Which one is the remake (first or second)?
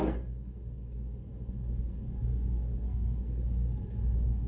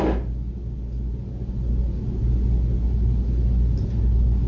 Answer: first